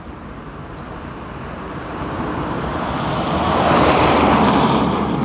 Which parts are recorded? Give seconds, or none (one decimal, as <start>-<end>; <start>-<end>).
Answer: 2.7-3.8